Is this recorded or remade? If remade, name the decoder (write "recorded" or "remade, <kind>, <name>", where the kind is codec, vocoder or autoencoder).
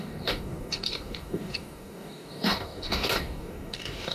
remade, codec, DAC